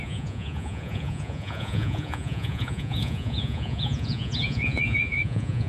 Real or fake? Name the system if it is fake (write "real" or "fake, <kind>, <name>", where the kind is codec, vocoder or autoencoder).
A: fake, vocoder, Vocos